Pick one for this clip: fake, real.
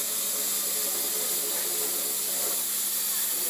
real